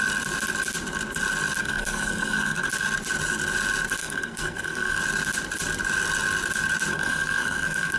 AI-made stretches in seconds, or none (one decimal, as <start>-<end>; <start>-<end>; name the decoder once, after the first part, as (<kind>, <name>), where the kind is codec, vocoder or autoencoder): 1.6-2.7 (codec, SNAC); 4.0-5.0; 6.9-8.0